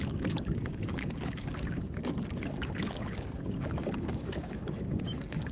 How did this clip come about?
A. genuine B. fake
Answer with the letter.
B